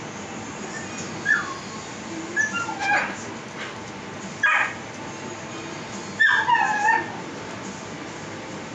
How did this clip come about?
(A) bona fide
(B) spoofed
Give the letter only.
A